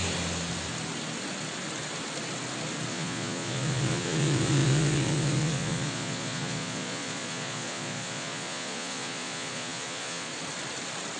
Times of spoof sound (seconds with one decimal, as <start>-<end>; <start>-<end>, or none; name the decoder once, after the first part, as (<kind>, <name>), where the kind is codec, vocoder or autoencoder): 2.9-10.3 (vocoder, Vocos)